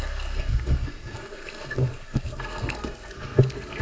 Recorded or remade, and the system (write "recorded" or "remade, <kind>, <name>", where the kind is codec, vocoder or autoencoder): remade, codec, SNAC